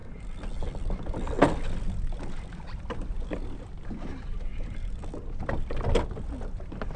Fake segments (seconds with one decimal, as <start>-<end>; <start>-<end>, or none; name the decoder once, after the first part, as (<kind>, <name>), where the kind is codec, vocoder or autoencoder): none